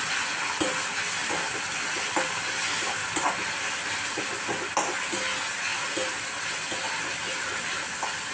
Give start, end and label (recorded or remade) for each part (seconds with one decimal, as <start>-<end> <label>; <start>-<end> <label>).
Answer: 0.0-1.2 recorded; 1.2-3.2 remade; 3.2-5.7 recorded; 5.7-6.4 remade; 6.4-8.3 recorded